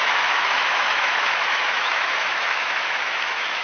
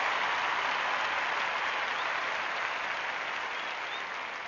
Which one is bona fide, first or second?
second